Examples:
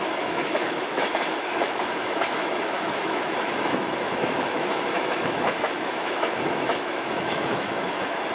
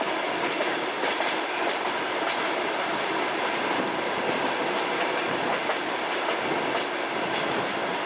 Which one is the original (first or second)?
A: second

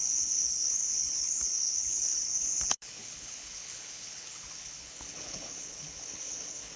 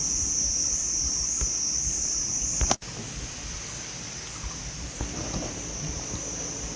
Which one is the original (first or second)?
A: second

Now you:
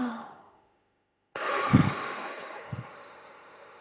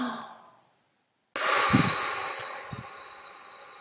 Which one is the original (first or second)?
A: second